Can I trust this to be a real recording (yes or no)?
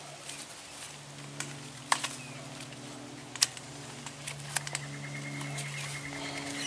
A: yes